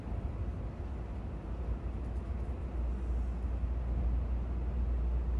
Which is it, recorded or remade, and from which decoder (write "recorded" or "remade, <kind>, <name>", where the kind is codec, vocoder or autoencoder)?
recorded